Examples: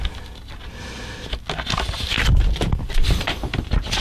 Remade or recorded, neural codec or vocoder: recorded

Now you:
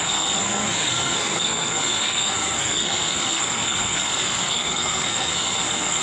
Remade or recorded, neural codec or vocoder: remade, codec, SNAC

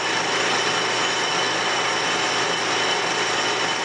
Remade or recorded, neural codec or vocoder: recorded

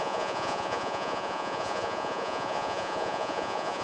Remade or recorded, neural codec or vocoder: remade, vocoder, Vocos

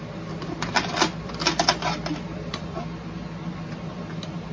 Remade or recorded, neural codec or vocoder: recorded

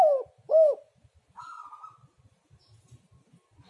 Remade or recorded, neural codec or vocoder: recorded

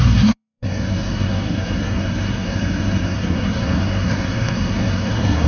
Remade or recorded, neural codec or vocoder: remade, codec, SNAC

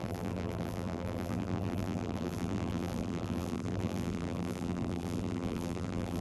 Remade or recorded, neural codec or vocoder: remade, vocoder, BigVGAN v2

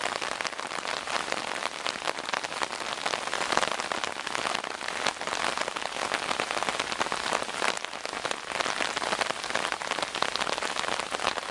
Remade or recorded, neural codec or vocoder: recorded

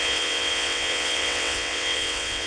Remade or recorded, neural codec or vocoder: remade, vocoder, WaveNeXt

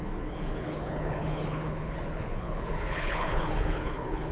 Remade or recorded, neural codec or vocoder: remade, codec, HILCodec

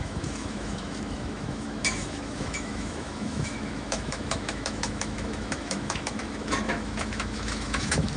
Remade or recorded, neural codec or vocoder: remade, autoencoder, DAC-VAE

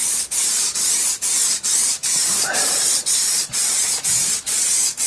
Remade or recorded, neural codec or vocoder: remade, vocoder, BigVGAN v2